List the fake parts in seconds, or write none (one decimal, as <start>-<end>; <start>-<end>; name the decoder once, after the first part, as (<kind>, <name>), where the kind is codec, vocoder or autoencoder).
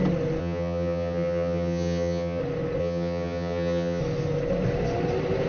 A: 0.4-2.4 (vocoder, HiFi-GAN); 2.8-4.0